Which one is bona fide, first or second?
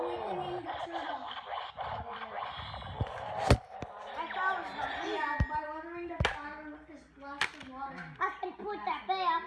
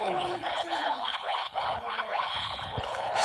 first